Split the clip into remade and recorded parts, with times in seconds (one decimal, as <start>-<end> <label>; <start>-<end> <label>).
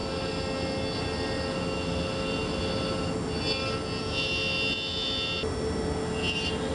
0.0-6.7 recorded